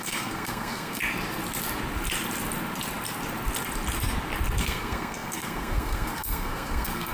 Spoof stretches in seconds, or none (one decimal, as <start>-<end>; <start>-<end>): 0.0-1.0; 4.6-7.1

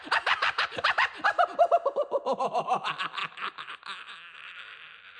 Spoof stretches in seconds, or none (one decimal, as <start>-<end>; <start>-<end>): none

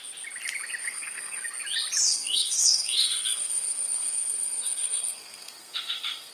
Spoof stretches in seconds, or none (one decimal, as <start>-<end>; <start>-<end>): 0.8-1.4; 2.1-6.3

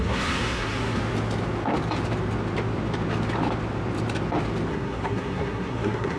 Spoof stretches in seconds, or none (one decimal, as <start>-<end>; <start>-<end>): 0.0-1.0; 4.7-6.2

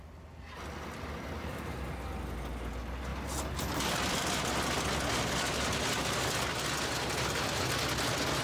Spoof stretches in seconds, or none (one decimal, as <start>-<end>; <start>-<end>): none

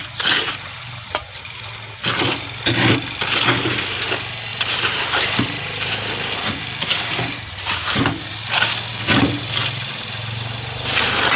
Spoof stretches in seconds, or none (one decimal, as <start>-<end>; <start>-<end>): 0.0-1.1; 4.5-5.9

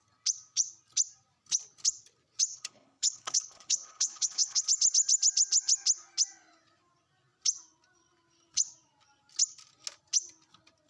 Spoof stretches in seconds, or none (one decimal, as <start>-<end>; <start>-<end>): 2.5-4.6